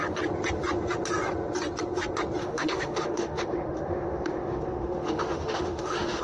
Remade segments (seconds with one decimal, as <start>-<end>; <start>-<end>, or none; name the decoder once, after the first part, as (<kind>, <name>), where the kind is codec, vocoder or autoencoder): 2.4-6.2 (autoencoder, DAC-VAE)